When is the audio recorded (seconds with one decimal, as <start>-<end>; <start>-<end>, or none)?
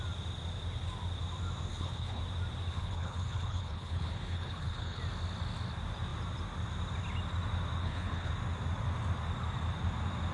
0.0-1.7; 2.2-2.7; 5.0-7.8; 8.3-10.3